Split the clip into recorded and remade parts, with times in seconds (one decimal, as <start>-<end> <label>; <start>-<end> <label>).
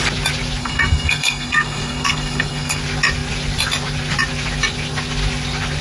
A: 0.0-0.6 recorded; 0.6-2.8 remade; 2.8-5.8 recorded